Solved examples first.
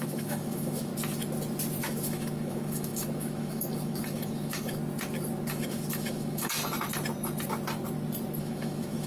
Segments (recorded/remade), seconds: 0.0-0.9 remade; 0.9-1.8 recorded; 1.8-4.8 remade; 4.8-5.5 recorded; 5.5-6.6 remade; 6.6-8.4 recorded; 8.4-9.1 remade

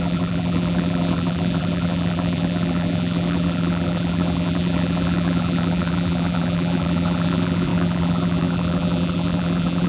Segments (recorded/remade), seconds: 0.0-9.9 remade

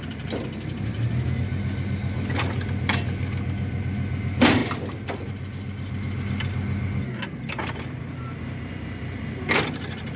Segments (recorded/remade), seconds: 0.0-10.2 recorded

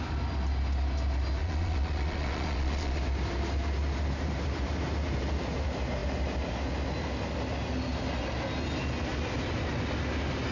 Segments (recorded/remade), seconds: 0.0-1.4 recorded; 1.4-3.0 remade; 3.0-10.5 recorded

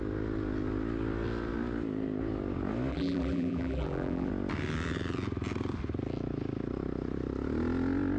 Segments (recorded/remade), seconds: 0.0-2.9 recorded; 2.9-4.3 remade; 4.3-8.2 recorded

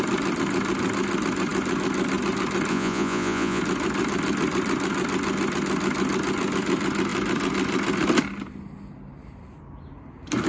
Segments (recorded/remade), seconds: 0.0-2.7 recorded; 2.7-3.6 remade; 3.6-10.5 recorded